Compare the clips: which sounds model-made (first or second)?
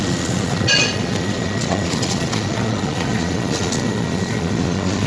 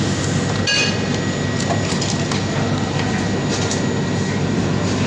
first